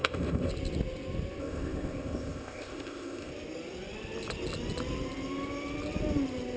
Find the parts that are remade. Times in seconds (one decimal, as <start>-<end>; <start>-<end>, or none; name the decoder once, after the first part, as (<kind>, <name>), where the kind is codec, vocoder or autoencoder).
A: 0.0-0.5 (codec, ZipCodec); 1.4-3.3